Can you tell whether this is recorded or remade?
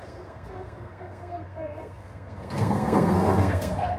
remade